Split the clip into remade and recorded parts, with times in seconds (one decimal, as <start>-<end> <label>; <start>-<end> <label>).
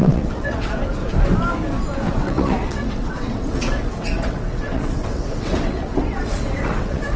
0.0-1.0 remade; 1.0-2.1 recorded; 2.1-7.2 remade